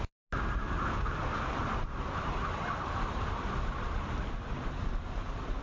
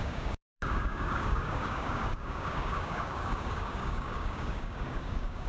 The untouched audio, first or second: first